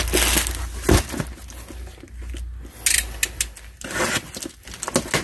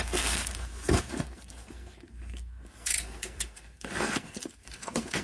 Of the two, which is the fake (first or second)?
second